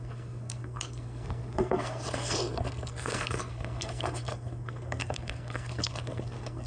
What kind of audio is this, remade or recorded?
remade